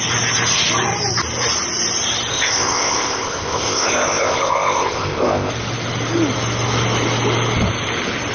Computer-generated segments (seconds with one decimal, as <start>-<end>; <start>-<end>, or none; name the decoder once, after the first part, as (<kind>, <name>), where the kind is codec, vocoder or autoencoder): 2.3-5.5 (codec, ZipCodec)